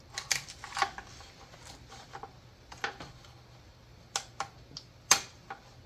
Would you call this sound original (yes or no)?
yes